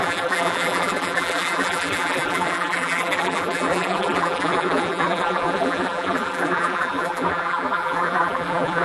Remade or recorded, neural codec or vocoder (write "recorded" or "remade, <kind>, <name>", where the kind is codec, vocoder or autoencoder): remade, vocoder, BigVGAN v2